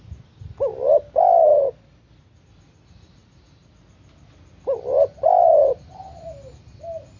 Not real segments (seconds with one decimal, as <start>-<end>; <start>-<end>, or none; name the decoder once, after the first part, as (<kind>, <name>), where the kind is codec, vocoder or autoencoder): none